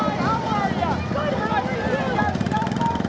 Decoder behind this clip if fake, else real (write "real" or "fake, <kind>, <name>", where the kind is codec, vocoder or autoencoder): real